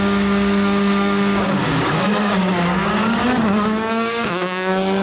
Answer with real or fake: fake